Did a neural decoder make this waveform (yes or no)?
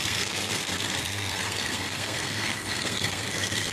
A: yes